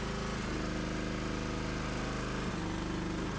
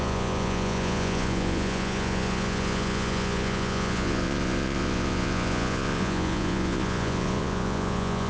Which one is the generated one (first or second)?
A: second